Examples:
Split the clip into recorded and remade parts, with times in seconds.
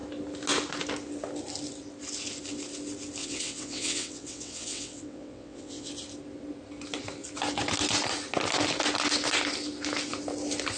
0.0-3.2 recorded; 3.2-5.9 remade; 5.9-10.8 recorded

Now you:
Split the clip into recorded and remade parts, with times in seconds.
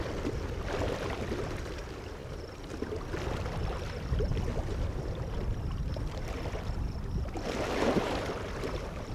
0.0-2.2 remade; 2.2-3.6 recorded; 3.6-9.1 remade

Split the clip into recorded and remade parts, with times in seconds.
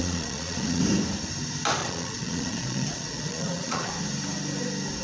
0.0-0.8 remade; 0.8-1.8 recorded; 1.8-3.9 remade; 3.9-5.0 recorded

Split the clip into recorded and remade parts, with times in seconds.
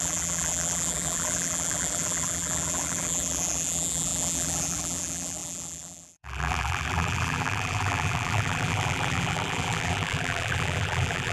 0.0-11.3 remade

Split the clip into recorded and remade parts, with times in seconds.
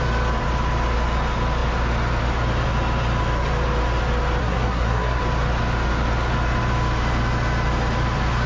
0.0-4.4 recorded; 4.4-5.2 remade; 5.2-8.5 recorded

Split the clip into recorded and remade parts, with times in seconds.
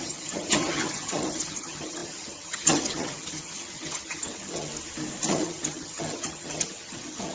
0.0-4.7 remade; 4.7-5.3 recorded; 5.3-7.3 remade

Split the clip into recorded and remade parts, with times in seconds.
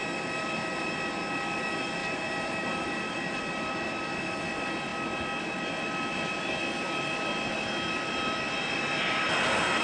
0.0-2.0 recorded; 2.0-3.4 remade; 3.4-9.8 recorded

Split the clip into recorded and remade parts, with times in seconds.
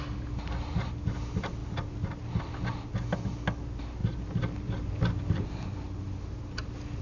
0.0-7.0 recorded